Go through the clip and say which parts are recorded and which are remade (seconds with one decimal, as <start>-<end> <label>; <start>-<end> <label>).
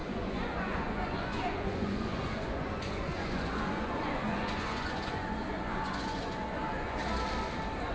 0.0-7.0 remade; 7.0-7.9 recorded